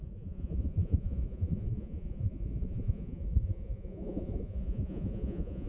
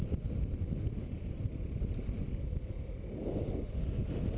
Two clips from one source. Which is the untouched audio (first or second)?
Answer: second